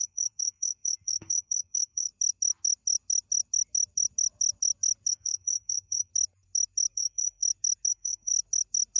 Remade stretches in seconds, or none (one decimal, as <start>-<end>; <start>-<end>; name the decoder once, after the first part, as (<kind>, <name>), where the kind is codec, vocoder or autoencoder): 0.0-2.1 (codec, SNAC); 5.1-6.1; 6.9-7.4; 7.9-8.3